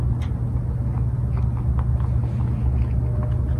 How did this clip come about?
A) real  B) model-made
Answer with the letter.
A